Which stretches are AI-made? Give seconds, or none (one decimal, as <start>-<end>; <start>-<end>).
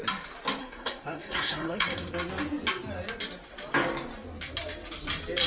0.6-2.1